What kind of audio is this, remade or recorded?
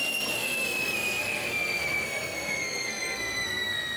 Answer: remade